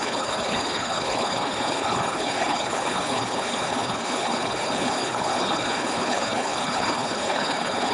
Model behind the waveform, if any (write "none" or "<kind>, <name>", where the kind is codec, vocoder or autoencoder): codec, HILCodec